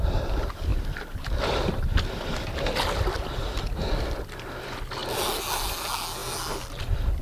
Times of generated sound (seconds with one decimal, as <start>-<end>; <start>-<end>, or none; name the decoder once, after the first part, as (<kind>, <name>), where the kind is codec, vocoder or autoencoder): none